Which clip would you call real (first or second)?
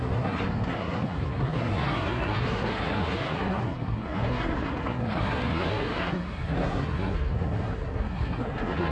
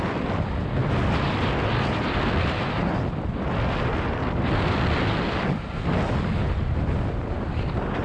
second